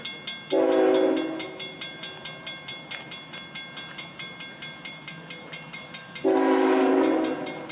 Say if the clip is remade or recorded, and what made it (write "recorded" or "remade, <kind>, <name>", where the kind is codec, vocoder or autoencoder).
recorded